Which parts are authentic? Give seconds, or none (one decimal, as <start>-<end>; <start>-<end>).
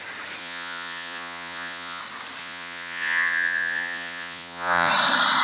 0.0-0.4; 2.0-2.4; 4.9-5.4